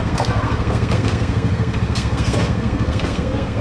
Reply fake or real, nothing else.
fake